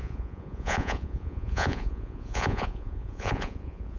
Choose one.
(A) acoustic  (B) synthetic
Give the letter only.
B